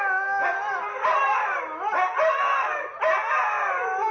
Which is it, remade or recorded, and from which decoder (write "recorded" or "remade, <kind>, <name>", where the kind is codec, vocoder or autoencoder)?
recorded